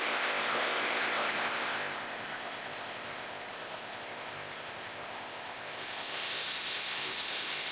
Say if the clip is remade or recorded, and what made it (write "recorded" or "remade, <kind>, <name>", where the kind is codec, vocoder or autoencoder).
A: remade, codec, ZipCodec